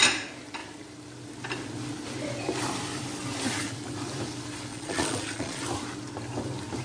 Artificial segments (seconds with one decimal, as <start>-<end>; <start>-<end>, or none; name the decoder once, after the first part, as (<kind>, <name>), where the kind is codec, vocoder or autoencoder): 4.7-5.6 (vocoder, Vocos)